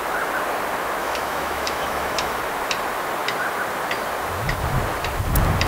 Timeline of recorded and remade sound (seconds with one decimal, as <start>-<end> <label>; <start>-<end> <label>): 0.0-1.0 recorded; 1.0-2.4 remade; 2.4-5.7 recorded